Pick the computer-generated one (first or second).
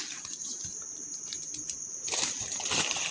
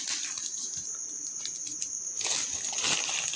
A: first